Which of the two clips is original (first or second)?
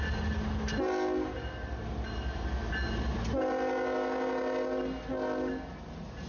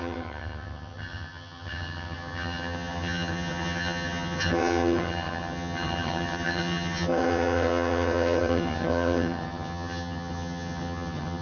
first